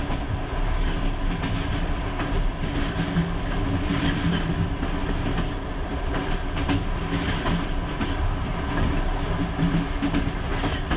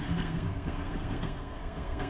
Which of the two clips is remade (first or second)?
second